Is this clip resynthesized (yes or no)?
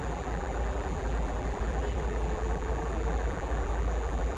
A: yes